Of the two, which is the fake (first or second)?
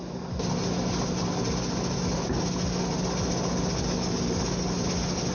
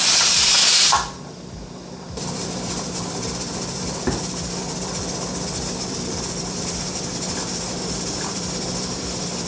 second